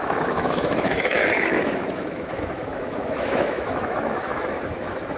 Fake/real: fake